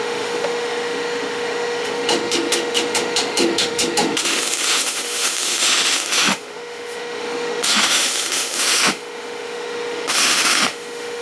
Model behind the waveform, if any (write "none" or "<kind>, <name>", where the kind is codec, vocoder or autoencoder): autoencoder, DAC-VAE